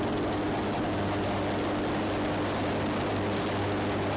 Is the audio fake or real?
real